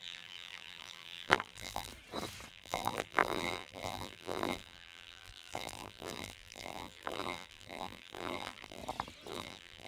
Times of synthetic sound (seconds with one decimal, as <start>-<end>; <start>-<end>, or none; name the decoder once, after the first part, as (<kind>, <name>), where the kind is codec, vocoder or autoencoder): 0.0-1.9 (vocoder, BigVGAN v2); 2.5-8.8; 9.3-9.9